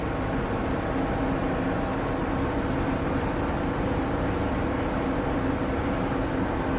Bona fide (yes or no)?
yes